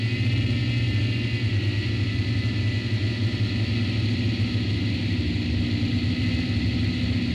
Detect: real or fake real